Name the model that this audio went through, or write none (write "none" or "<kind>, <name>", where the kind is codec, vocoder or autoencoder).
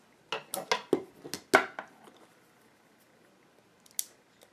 none